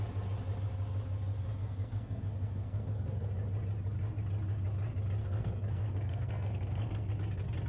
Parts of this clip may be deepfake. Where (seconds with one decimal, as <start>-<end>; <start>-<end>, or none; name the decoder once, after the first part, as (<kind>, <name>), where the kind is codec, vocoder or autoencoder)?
1.6-3.3 (codec, SNAC); 5.2-7.1